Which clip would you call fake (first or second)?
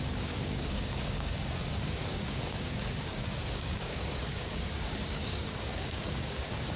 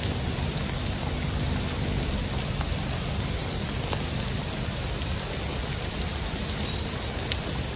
first